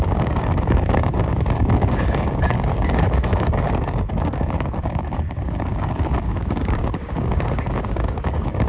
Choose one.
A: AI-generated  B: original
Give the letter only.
A